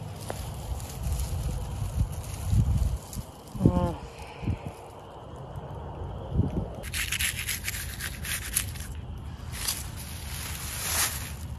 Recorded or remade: recorded